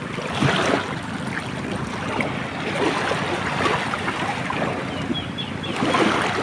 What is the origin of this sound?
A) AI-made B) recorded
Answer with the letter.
B